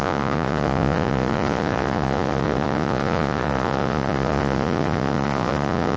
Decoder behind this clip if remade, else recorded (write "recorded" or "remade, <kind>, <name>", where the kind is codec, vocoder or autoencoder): remade, vocoder, Vocos